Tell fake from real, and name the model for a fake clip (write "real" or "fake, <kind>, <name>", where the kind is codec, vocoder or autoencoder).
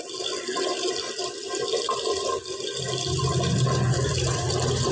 real